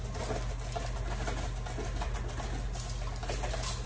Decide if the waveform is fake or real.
real